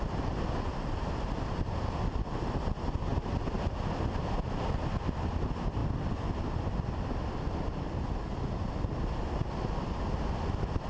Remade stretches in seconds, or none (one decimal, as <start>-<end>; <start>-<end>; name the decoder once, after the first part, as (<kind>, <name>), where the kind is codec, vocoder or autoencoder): none